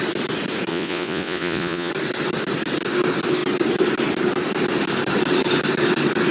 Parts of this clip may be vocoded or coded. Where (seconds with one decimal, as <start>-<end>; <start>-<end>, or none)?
0.7-1.9